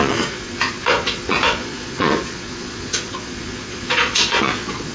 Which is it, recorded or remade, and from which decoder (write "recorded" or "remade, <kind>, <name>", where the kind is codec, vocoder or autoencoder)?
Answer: remade, vocoder, Vocos